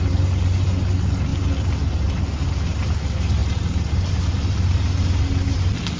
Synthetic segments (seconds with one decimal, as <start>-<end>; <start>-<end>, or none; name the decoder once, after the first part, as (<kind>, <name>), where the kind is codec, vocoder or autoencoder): none